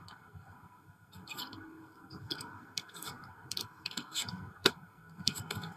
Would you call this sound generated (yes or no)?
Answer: yes